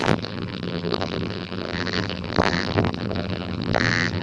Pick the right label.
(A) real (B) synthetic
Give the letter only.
B